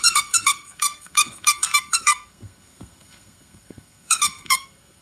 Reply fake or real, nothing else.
fake